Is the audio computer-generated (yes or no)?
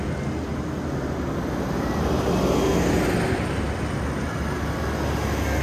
no